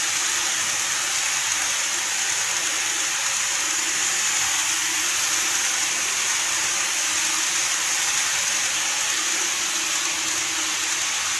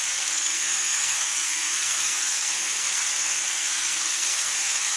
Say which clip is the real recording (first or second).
first